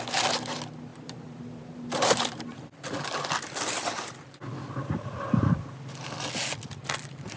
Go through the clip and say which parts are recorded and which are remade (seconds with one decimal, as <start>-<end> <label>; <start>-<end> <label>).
0.0-0.9 recorded; 0.9-2.6 remade; 2.6-7.4 recorded